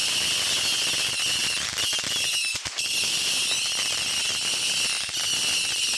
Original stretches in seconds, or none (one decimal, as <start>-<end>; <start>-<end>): 0.0-6.0